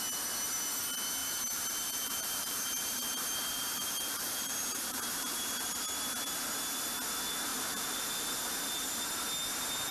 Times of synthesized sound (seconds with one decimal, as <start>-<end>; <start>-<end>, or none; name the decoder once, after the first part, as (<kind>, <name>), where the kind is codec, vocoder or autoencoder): 1.2-5.8 (vocoder, BigVGAN v2); 7.5-9.0